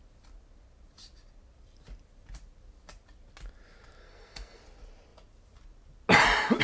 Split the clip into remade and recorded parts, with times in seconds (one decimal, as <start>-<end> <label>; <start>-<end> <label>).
0.0-4.0 recorded; 4.0-4.6 remade; 4.6-6.6 recorded